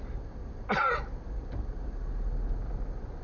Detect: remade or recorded recorded